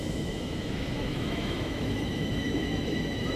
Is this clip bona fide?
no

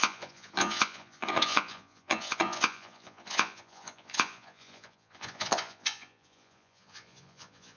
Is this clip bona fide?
no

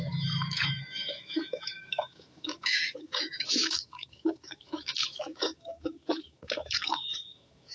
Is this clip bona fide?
no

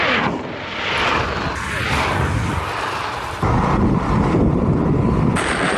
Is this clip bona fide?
yes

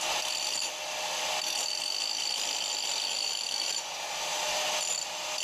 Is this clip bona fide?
yes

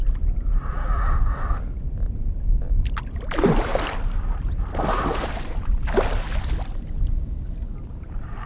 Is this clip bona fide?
yes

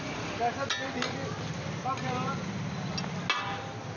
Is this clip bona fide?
yes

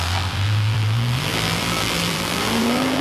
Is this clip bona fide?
no